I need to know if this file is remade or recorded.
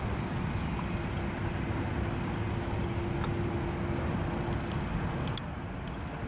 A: recorded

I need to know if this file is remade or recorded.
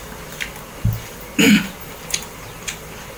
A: recorded